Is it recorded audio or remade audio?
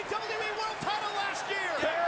recorded